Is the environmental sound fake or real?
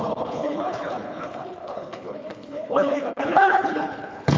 fake